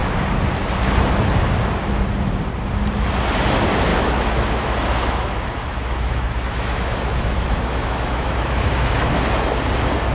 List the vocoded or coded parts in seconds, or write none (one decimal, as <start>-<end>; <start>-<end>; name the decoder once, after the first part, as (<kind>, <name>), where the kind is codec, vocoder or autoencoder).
3.9-9.1 (autoencoder, DAC-VAE)